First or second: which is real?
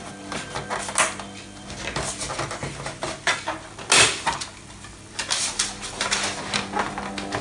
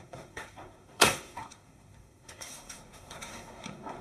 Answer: first